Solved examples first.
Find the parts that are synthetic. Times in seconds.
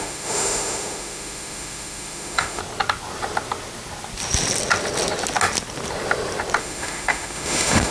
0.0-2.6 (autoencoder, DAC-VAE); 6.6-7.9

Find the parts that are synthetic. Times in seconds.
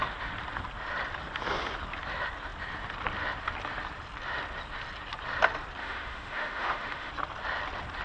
5.8-7.1 (autoencoder, DAC-VAE)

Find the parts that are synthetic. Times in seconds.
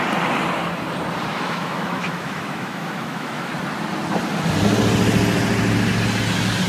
1.3-3.5 (autoencoder, DAC-VAE)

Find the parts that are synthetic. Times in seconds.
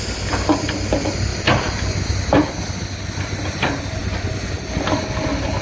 none